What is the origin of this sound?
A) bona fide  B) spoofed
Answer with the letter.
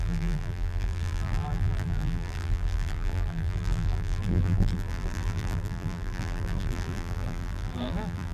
B